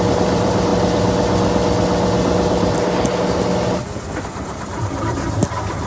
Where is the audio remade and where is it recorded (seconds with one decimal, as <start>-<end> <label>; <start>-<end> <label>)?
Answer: 0.0-0.7 remade; 0.7-4.2 recorded; 4.2-5.9 remade